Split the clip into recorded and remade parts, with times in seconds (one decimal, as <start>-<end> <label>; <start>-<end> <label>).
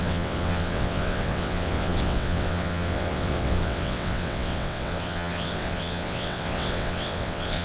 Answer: 0.0-7.6 remade